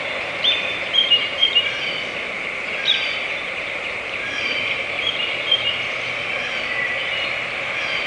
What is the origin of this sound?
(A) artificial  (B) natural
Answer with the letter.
A